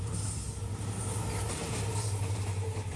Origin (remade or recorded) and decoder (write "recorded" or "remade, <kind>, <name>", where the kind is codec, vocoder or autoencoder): remade, vocoder, BigVGAN v2